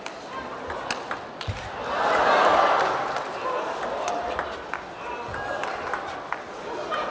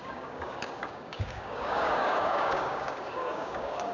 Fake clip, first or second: second